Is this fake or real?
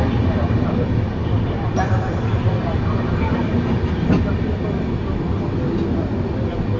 real